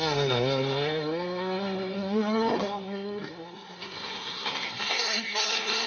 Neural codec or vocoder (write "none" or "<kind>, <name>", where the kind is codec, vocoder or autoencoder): codec, SNAC